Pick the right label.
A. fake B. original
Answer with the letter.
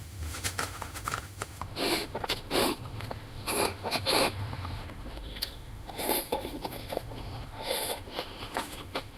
A